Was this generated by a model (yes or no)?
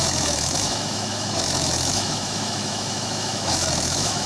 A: yes